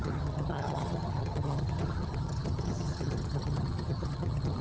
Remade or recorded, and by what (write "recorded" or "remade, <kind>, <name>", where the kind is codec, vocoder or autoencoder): remade, vocoder, HiFi-GAN